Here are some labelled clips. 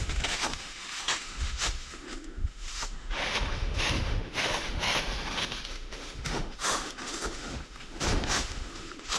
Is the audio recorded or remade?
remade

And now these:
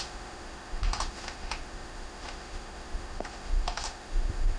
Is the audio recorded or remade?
remade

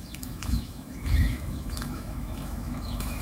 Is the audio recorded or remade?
remade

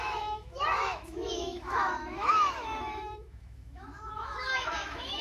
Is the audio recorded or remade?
remade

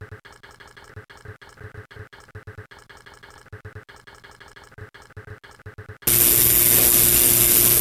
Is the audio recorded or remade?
recorded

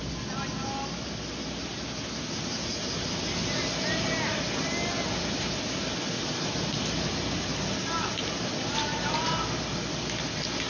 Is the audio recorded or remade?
recorded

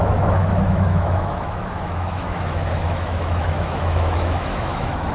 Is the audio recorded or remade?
remade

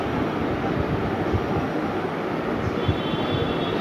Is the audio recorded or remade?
recorded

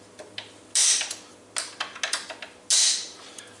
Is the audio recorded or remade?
recorded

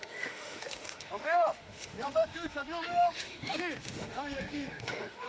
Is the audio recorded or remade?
remade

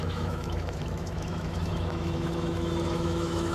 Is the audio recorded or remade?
remade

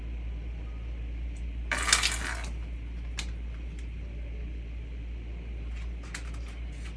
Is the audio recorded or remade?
recorded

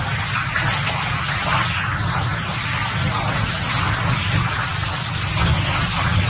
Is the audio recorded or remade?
recorded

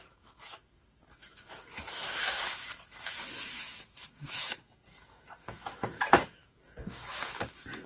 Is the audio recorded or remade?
remade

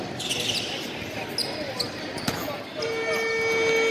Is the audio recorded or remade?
recorded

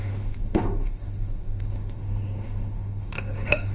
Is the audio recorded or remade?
remade